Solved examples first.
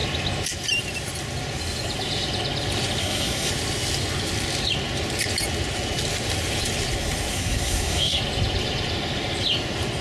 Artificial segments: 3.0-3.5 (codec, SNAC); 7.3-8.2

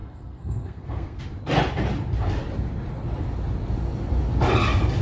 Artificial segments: 0.0-1.2 (codec, SNAC)